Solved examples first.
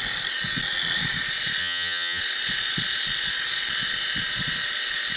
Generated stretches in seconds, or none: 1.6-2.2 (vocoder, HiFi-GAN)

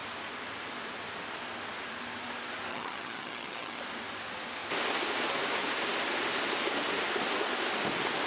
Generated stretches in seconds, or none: 2.7-3.8 (vocoder, HiFi-GAN)

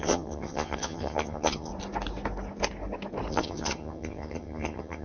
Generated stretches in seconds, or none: 0.0-1.7 (vocoder, HiFi-GAN); 3.3-5.0

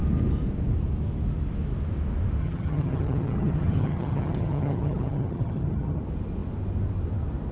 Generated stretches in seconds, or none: 2.4-6.0 (vocoder, HiFi-GAN)

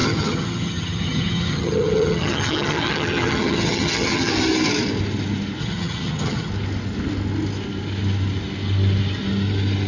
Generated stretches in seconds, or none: 0.0-4.3 (vocoder, HiFi-GAN); 5.6-6.5

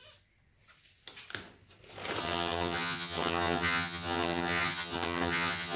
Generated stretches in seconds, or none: 2.2-5.8 (vocoder, HiFi-GAN)